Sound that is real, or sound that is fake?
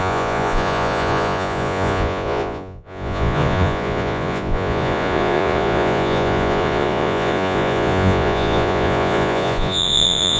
fake